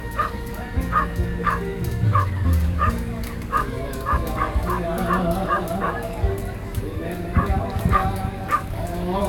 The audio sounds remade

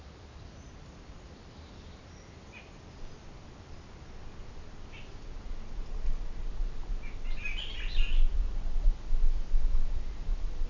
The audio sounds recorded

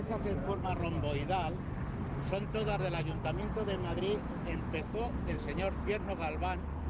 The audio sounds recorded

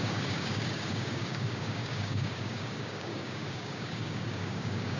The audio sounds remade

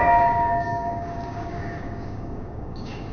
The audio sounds remade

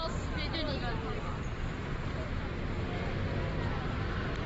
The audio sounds recorded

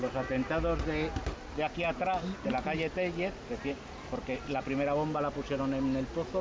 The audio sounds recorded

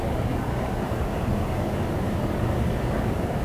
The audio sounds remade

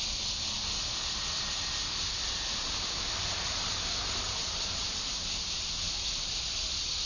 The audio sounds recorded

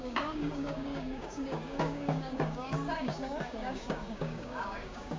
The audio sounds remade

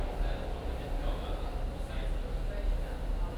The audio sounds recorded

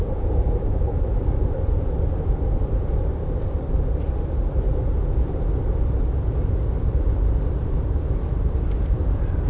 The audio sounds recorded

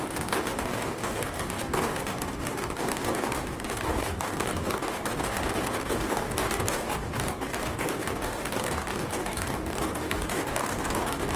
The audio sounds remade